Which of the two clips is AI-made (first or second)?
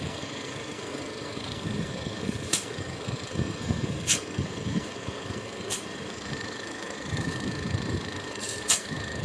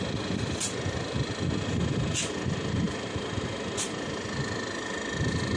first